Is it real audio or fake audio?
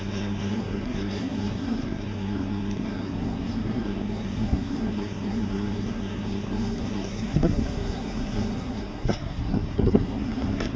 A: fake